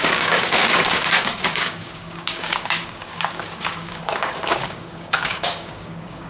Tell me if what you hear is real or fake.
fake